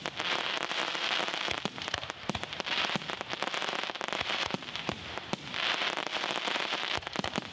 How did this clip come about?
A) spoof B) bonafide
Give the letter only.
B